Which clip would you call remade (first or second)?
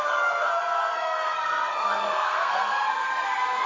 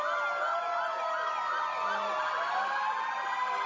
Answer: first